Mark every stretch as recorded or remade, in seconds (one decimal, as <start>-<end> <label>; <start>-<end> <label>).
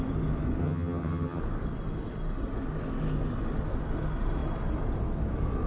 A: 0.0-0.6 recorded; 0.6-1.4 remade; 1.4-5.7 recorded